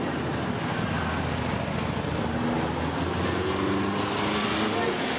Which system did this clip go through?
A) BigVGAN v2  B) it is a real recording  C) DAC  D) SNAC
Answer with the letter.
B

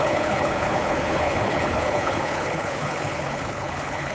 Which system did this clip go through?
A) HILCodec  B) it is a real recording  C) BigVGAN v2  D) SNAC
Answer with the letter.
A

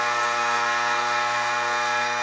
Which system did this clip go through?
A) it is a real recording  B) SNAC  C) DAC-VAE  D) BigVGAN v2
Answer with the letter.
B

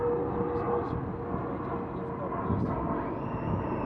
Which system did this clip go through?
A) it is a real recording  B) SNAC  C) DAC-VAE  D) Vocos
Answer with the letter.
A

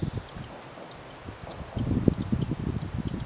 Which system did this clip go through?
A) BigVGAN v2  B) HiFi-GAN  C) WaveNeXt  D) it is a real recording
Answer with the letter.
D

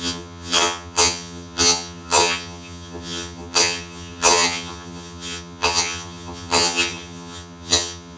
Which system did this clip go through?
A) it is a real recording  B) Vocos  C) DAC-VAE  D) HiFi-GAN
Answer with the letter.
D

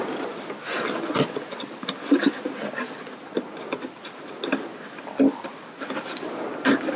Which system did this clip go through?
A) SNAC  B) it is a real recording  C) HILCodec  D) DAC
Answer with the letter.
B